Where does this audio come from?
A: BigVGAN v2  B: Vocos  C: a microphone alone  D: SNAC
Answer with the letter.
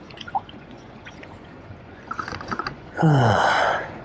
B